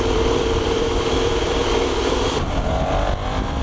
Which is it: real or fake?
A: fake